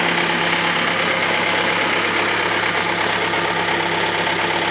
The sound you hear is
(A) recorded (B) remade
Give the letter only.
A